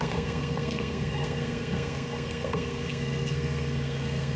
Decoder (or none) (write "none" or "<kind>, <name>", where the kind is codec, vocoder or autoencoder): codec, SNAC